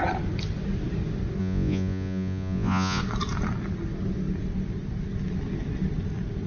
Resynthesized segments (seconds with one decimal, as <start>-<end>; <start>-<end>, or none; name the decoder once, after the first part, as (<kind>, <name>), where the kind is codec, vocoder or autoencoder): 1.4-3.0 (vocoder, Vocos)